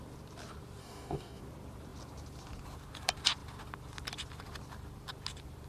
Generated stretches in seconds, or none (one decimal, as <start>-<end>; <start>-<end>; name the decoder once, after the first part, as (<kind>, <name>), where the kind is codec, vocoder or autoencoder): 0.8-1.4 (codec, DAC)